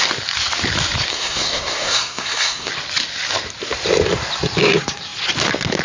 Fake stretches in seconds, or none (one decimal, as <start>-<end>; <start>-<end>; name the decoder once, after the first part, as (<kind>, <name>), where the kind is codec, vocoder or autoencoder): 1.1-2.7 (codec, SNAC)